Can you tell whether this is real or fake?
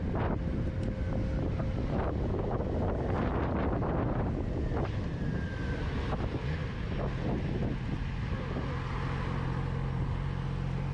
real